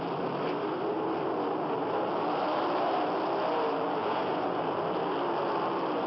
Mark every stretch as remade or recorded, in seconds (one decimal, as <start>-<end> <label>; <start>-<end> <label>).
0.0-4.0 recorded; 4.0-4.6 remade; 4.6-6.1 recorded